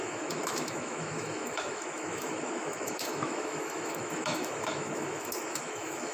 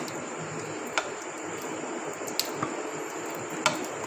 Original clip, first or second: second